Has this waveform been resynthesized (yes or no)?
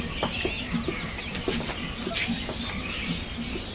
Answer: no